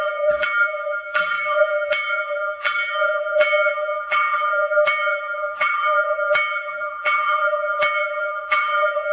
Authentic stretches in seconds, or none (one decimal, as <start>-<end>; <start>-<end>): none